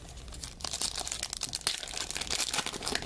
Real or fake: real